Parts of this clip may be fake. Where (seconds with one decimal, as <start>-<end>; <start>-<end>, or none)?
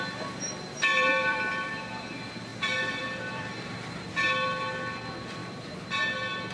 0.9-1.7; 2.5-4.1; 5.4-5.9